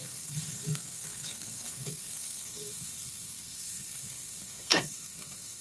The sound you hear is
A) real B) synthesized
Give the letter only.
B